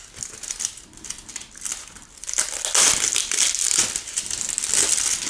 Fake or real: real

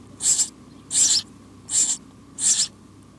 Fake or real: real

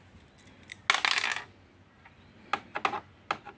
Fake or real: real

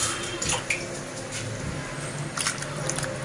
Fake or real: real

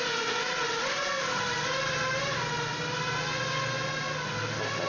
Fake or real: real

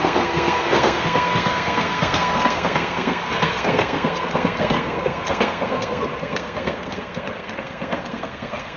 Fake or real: fake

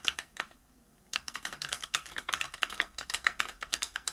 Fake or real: fake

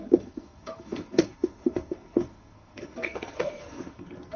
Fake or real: fake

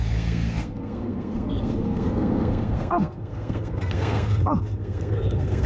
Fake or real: fake